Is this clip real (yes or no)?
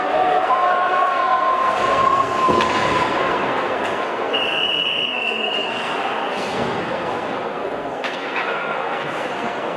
no